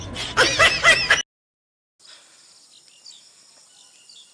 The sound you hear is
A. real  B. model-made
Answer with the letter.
A